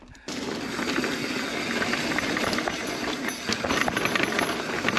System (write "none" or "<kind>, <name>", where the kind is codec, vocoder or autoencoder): none